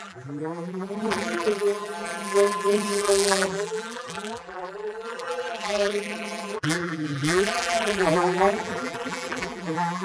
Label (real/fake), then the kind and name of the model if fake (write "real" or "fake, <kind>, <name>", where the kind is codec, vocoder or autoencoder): fake, vocoder, BigVGAN v2